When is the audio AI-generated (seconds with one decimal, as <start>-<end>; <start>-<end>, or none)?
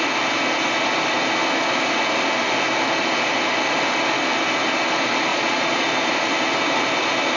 5.3-5.8